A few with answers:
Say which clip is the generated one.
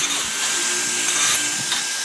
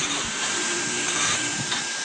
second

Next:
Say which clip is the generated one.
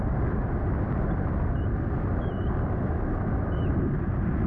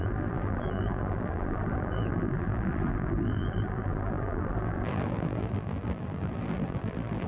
second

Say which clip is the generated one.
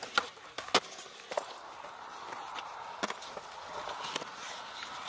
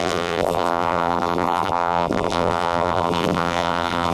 second